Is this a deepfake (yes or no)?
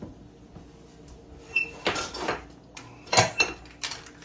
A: no